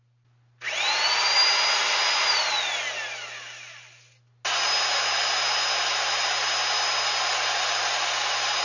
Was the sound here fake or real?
real